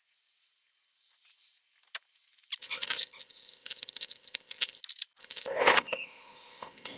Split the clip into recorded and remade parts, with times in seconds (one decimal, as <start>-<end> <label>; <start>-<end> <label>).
0.0-2.6 recorded; 2.6-4.8 remade; 4.8-5.2 recorded; 5.2-7.0 remade